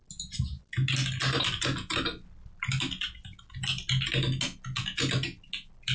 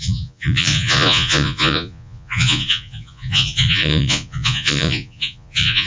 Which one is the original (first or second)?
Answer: first